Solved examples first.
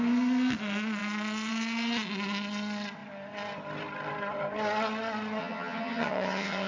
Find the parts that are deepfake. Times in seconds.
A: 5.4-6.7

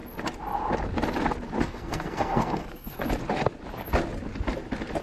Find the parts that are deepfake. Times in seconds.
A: 1.6-3.0

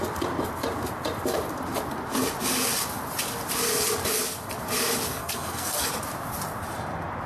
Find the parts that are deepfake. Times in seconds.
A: 5.1-5.9